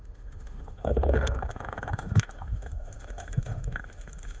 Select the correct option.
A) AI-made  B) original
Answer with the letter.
A